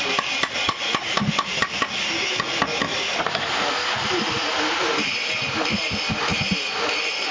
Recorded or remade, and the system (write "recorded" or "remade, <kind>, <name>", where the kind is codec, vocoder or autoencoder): recorded